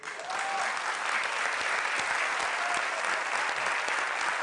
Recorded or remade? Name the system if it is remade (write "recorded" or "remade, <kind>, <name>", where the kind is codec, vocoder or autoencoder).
recorded